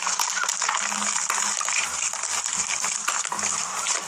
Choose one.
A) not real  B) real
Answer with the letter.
B